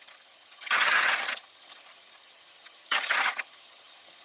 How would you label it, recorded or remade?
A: remade